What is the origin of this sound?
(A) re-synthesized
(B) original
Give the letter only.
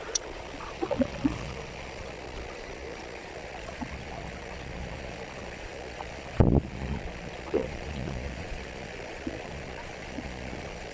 A